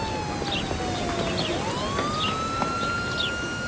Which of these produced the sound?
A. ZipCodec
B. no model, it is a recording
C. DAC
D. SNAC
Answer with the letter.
B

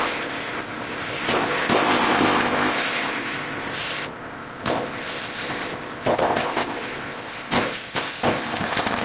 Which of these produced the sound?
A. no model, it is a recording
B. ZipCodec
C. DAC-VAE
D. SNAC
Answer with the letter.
B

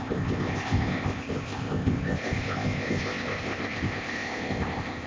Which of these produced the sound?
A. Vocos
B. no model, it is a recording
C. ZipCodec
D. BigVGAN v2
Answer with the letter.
C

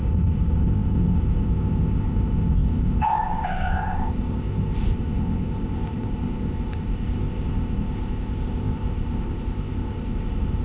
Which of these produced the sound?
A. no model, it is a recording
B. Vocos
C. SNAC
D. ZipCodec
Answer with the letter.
D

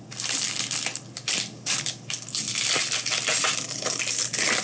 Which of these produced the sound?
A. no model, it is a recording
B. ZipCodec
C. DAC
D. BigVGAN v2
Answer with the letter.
A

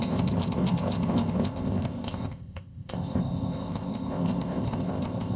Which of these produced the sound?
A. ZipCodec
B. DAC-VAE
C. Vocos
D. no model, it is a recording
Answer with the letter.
A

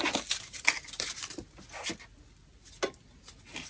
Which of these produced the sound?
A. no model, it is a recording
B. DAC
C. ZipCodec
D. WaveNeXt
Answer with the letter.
A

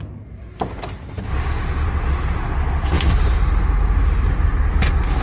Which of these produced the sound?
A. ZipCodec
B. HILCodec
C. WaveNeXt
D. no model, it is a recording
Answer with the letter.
D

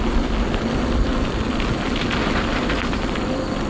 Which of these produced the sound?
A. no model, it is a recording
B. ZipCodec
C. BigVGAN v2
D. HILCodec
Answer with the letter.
A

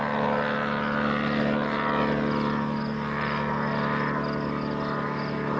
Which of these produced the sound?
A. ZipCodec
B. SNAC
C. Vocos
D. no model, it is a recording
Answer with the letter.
D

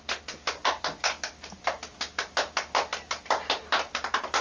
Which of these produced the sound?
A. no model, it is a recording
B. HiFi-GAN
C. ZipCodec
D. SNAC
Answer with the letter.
A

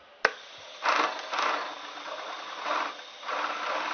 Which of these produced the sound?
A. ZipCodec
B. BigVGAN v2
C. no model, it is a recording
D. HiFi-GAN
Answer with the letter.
C